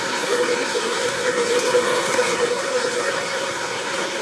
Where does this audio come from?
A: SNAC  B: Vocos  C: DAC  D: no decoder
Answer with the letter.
A